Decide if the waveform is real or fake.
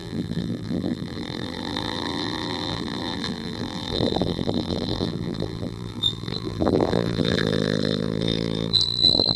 fake